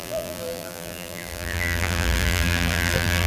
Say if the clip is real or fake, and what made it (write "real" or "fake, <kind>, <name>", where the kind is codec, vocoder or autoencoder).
fake, vocoder, BigVGAN v2